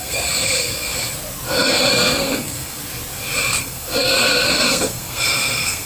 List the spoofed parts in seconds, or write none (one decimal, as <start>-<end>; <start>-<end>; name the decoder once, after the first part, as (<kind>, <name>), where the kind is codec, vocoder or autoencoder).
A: 0.0-0.9 (codec, SNAC); 1.9-2.8; 3.6-5.9